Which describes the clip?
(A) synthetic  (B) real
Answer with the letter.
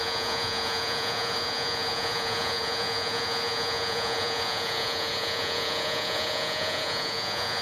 A